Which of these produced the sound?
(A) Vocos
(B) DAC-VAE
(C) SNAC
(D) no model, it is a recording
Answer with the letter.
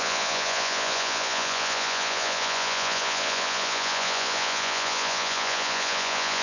A